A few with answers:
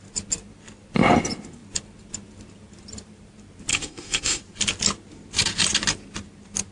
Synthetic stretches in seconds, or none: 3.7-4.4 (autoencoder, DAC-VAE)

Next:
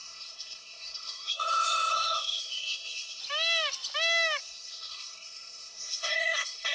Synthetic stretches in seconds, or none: 0.0-3.2 (codec, SNAC); 4.4-6.7

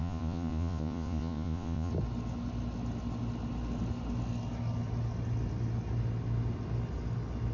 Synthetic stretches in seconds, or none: 0.0-1.9 (vocoder, Vocos)

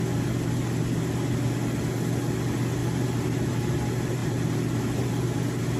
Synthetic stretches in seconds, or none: 2.8-3.7 (vocoder, BigVGAN v2); 4.2-5.1